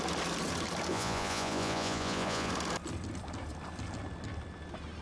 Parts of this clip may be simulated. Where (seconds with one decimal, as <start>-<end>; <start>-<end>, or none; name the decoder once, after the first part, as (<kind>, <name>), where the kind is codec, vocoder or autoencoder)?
0.9-2.5 (vocoder, Vocos)

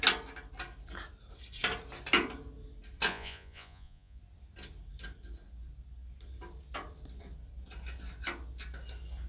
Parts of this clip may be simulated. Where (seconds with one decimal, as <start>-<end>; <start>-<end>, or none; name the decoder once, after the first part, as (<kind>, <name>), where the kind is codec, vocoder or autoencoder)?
3.1-4.2 (vocoder, Vocos)